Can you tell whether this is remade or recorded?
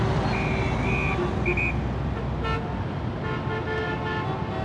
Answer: recorded